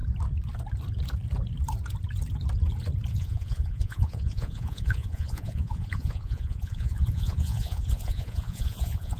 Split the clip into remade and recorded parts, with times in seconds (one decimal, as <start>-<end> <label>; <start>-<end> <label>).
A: 0.0-3.1 recorded; 3.1-9.2 remade